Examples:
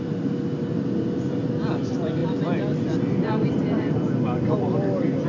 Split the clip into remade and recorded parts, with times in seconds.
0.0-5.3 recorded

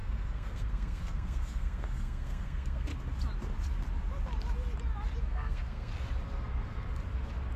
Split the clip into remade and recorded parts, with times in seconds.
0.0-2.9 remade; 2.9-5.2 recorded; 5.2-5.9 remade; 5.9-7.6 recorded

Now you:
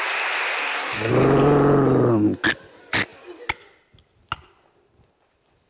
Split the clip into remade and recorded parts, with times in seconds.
0.0-0.6 recorded; 0.6-1.1 remade; 1.1-5.7 recorded